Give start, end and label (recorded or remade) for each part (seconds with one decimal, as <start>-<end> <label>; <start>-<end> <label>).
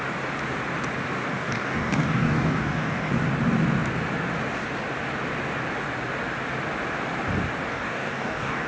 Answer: 0.0-1.3 recorded; 1.3-3.1 remade; 3.1-7.7 recorded; 7.7-8.7 remade